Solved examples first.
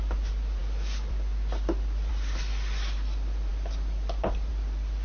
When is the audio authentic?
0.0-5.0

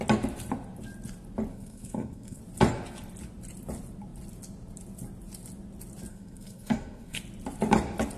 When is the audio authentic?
0.0-1.5; 2.4-6.1; 7.2-8.2

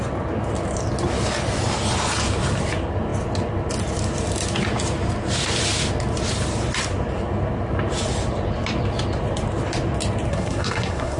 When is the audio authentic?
0.0-10.3